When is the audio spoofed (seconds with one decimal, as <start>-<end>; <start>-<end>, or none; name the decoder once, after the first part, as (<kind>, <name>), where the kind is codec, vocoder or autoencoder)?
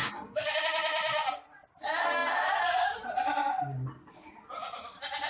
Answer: 0.0-0.6 (codec, DAC)